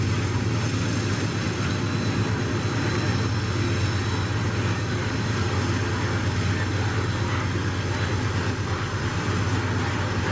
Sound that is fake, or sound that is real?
real